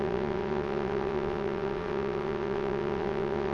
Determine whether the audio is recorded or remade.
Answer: remade